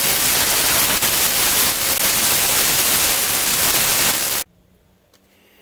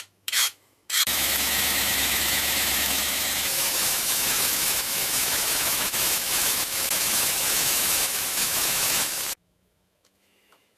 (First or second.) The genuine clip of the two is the first